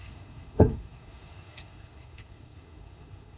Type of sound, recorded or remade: remade